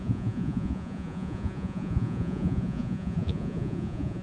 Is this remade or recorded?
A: remade